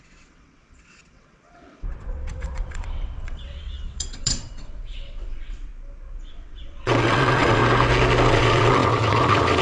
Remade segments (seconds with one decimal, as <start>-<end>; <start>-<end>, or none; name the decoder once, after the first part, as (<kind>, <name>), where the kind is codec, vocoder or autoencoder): 0.0-5.7 (vocoder, WaveNeXt); 6.3-7.6; 8.3-9.6